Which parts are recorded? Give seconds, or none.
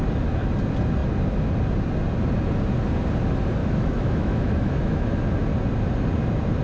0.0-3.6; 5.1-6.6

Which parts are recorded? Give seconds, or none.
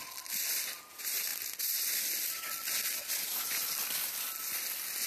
0.0-5.1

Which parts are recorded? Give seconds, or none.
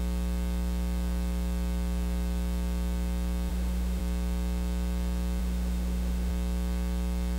0.0-3.5; 4.0-5.4; 6.3-7.4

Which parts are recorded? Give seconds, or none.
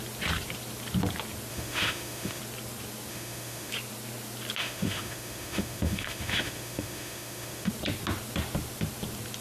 0.0-1.5; 2.4-3.1; 3.7-4.6; 7.7-9.4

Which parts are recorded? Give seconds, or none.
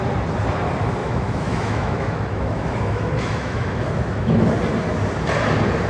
0.0-1.0; 4.5-5.9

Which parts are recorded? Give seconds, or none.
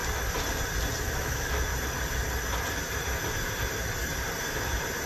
0.0-1.0; 1.7-5.1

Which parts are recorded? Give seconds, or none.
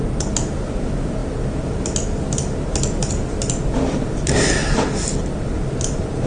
0.0-6.3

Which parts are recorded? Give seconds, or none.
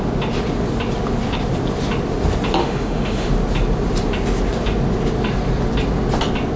0.0-2.6; 3.3-6.6